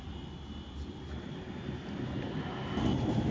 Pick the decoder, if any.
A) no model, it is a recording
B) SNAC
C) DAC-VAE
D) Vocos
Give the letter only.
A